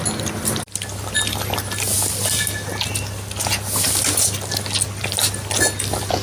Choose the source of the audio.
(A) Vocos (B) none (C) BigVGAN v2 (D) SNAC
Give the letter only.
B